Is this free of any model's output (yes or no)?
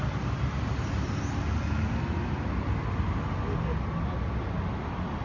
yes